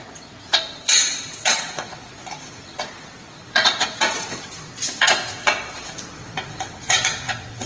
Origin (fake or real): fake